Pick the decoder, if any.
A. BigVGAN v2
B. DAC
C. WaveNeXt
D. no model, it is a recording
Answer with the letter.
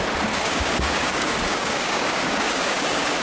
B